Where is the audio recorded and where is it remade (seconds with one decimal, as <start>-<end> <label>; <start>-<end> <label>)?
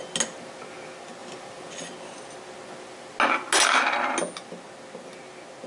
0.0-5.7 recorded